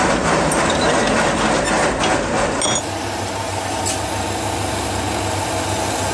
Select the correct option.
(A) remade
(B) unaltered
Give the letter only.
B